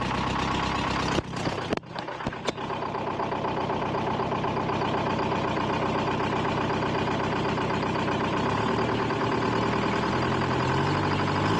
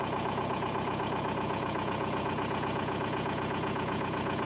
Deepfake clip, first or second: second